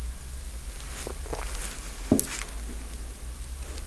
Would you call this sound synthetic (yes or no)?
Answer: no